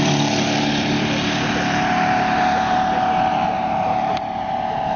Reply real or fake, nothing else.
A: fake